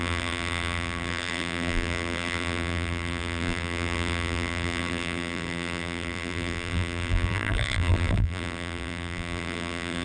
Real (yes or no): no